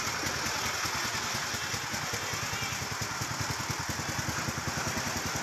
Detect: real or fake real